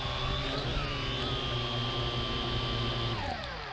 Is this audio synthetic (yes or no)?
no